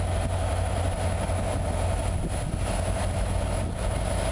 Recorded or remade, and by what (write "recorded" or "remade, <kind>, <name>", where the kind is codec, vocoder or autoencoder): recorded